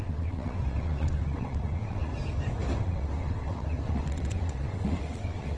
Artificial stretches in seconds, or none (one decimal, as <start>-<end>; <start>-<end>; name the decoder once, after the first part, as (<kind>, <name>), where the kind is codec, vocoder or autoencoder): 0.0-2.1 (vocoder, WaveNeXt); 2.8-5.6